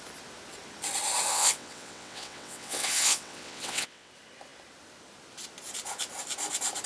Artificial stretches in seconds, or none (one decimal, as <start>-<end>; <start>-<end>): 1.3-4.1